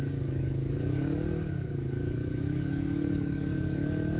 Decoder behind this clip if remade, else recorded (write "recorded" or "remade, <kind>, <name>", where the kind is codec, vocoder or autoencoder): remade, codec, DAC